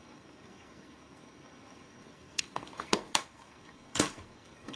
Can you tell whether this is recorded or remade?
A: remade